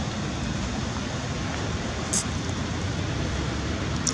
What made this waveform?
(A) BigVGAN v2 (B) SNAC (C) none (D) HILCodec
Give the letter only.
C